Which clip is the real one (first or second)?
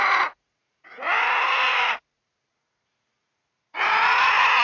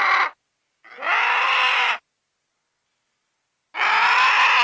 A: second